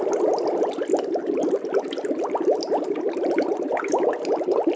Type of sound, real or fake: real